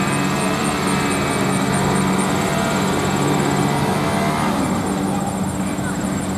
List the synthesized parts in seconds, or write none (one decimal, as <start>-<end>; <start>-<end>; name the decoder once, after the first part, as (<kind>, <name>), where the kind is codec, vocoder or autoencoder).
none